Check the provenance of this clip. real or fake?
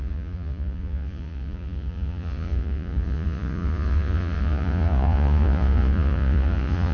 fake